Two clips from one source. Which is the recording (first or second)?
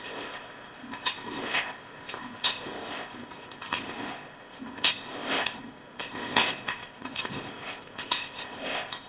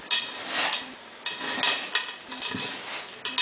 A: second